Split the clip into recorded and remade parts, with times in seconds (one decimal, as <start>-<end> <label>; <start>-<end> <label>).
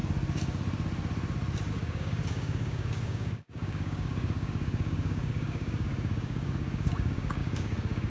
0.0-1.7 recorded; 1.7-8.1 remade